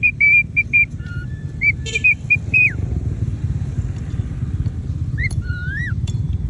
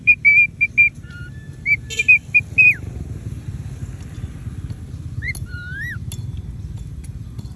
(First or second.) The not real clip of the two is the first